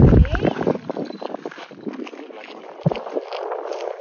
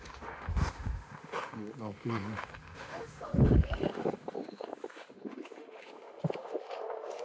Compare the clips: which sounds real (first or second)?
first